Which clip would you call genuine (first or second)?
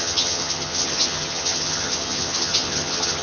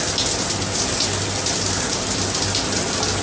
second